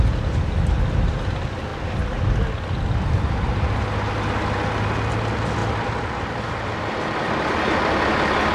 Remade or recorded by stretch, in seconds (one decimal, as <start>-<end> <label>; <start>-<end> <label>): 0.0-5.6 recorded; 5.6-7.0 remade; 7.0-8.5 recorded